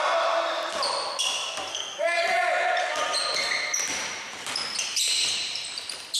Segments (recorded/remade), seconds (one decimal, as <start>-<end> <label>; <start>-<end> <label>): 0.0-1.7 recorded; 1.7-2.2 remade; 2.2-6.2 recorded